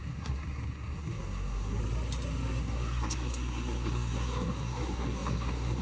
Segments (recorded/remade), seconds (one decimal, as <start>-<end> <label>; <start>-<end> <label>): 0.0-1.8 remade; 1.8-2.6 recorded; 2.6-5.8 remade